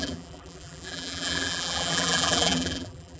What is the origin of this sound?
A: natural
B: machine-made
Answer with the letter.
B